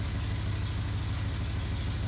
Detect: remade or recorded recorded